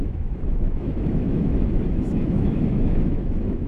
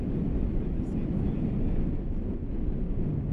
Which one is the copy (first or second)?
first